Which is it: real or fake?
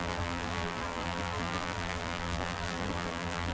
fake